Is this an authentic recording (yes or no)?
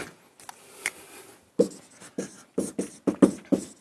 yes